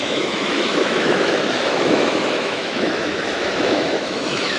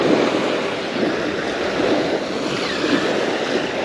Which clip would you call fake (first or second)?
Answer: first